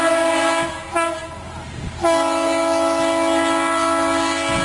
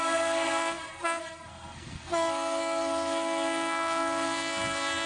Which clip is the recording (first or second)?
first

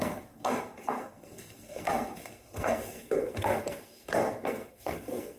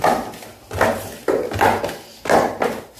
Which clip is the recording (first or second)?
second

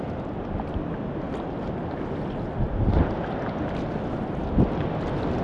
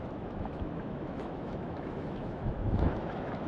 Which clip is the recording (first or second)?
first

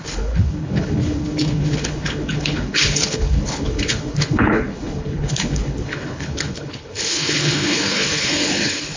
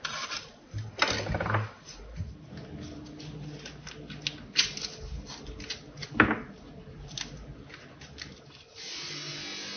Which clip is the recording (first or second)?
second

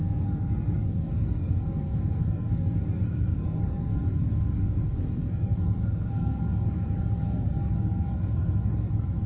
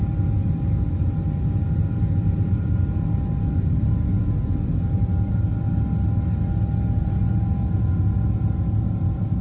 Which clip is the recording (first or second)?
second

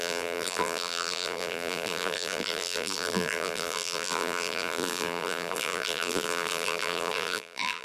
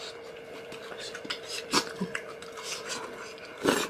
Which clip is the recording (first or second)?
second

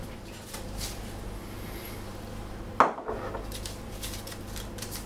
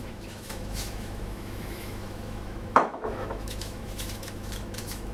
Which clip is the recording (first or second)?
first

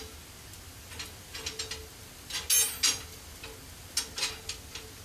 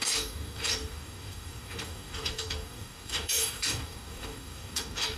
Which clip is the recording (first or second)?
first